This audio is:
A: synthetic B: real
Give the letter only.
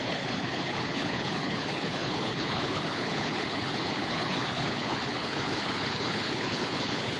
A